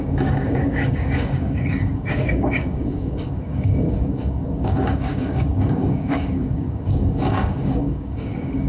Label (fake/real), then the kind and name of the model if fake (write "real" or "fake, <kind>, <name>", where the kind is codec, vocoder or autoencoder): fake, codec, DAC